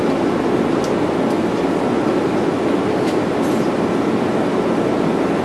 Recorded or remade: recorded